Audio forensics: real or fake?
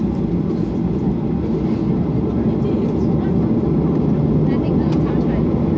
real